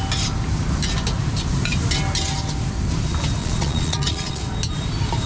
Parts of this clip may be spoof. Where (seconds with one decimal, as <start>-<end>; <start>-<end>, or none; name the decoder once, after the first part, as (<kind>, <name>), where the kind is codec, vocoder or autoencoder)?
3.4-4.4 (vocoder, Vocos)